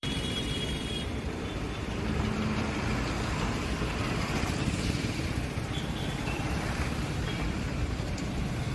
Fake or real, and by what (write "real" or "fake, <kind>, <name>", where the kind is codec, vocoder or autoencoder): fake, vocoder, BigVGAN v2